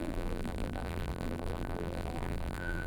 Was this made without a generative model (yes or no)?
no